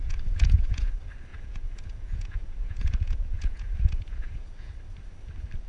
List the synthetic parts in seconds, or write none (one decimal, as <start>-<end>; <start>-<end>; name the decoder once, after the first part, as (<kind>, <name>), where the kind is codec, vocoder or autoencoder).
0.0-0.9 (vocoder, Vocos); 1.3-4.7